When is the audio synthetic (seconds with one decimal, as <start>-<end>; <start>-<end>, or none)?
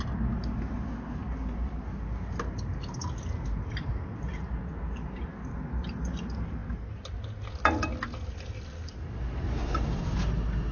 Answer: none